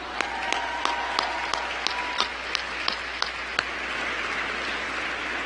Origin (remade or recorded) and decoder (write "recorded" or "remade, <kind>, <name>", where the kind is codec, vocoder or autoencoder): recorded